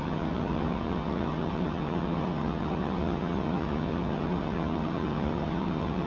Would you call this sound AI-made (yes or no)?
yes